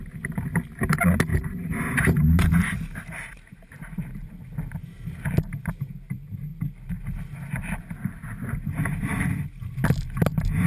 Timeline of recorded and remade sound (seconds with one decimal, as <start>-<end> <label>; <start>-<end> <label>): 0.0-1.3 recorded; 1.3-4.1 remade; 4.1-10.7 recorded